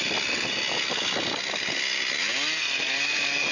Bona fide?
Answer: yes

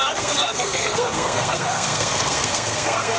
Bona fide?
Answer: no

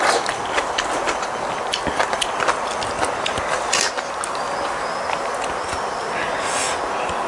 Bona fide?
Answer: yes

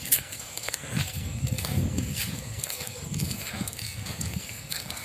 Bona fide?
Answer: no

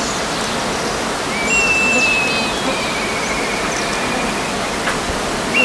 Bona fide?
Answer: yes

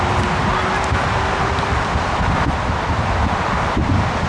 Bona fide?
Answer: yes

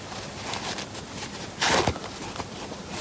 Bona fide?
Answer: yes